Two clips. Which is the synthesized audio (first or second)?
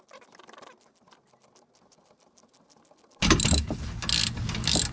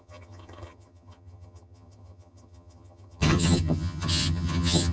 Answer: second